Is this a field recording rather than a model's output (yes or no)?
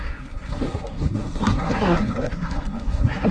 no